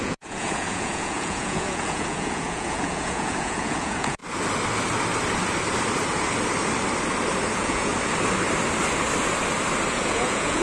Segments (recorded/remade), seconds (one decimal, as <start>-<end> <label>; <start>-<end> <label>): 0.0-4.2 remade; 4.2-7.5 recorded; 7.5-7.9 remade; 7.9-9.9 recorded; 9.9-10.6 remade